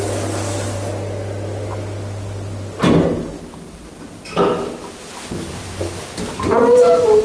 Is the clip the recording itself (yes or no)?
yes